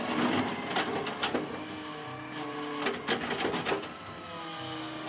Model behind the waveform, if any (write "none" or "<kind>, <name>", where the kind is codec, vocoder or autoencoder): none